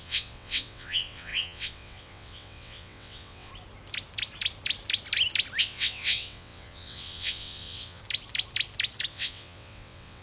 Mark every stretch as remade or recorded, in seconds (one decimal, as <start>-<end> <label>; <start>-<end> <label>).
0.0-3.5 remade; 3.5-5.6 recorded; 5.6-8.0 remade; 8.0-9.1 recorded; 9.1-10.2 remade